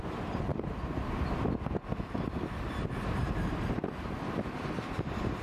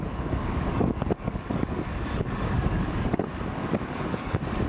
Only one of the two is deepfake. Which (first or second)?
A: second